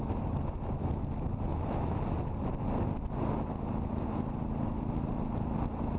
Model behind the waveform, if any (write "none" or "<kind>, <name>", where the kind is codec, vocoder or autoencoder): none